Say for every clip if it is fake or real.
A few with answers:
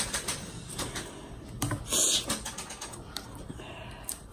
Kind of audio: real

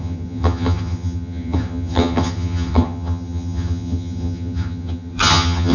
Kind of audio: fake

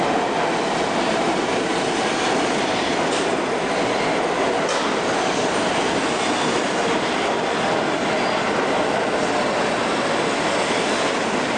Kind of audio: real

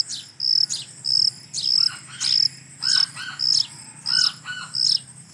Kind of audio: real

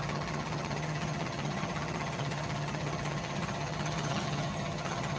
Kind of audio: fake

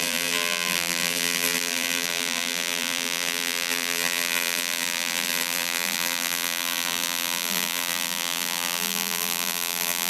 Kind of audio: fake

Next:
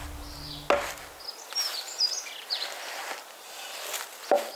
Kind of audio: real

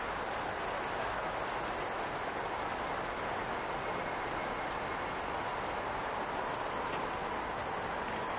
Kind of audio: real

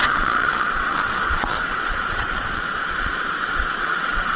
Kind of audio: fake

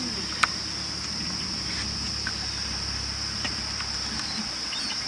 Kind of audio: real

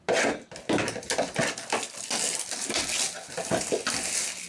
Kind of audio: real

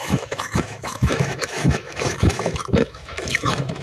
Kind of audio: fake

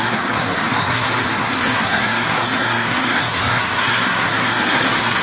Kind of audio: fake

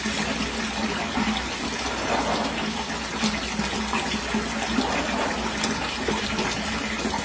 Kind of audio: real